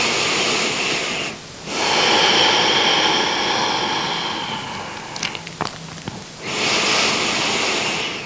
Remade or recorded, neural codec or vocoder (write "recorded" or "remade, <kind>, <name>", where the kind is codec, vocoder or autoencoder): recorded